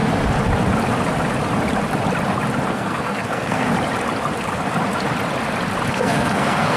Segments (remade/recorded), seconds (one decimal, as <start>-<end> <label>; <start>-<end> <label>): 0.0-2.7 recorded; 2.7-3.7 remade; 3.7-5.9 recorded; 5.9-6.8 remade